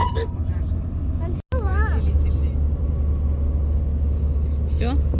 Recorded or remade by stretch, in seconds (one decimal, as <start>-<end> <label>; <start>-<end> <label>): 0.0-0.5 remade; 0.5-5.2 recorded